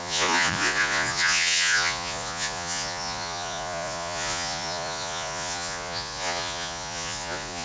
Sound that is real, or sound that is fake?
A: fake